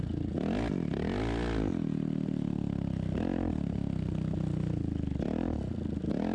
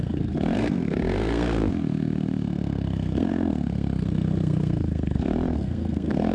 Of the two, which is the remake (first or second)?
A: second